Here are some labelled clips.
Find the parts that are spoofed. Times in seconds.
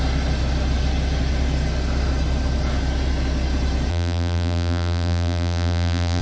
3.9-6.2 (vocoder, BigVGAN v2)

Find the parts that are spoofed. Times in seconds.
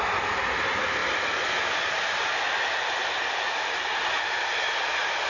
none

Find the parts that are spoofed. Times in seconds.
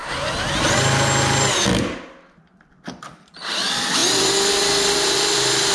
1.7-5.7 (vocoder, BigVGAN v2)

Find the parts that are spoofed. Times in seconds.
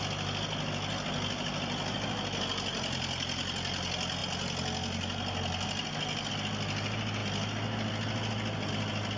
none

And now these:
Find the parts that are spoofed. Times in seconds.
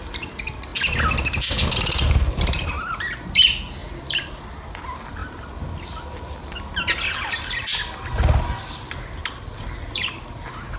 3.8-4.8 (vocoder, BigVGAN v2); 9.2-10.8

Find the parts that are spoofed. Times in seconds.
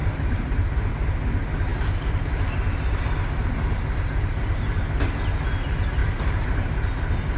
0.0-0.9 (vocoder, BigVGAN v2); 6.0-6.5